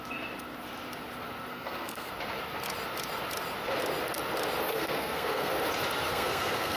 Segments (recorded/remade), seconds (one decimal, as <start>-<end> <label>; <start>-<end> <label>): 0.0-1.5 recorded; 1.5-2.1 remade; 2.1-4.7 recorded; 4.7-5.5 remade; 5.5-6.1 recorded; 6.1-6.8 remade